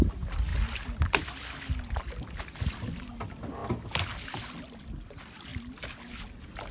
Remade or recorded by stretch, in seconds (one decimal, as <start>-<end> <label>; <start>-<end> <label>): 0.0-6.7 recorded